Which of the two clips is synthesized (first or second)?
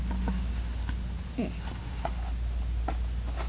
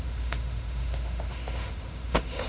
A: second